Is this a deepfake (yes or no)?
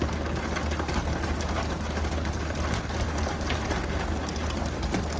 no